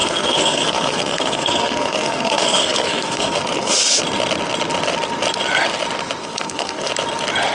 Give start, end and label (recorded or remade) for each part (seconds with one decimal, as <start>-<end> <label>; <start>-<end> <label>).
0.0-4.0 remade; 4.0-6.2 recorded; 6.2-6.9 remade; 6.9-7.5 recorded